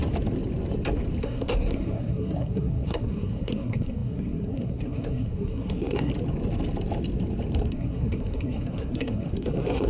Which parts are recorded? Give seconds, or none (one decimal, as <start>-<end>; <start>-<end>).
0.0-1.2; 6.1-7.7